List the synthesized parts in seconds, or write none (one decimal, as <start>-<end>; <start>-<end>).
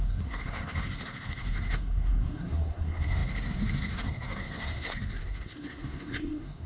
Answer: 0.0-6.7